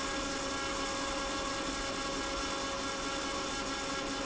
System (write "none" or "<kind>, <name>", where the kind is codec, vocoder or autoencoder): none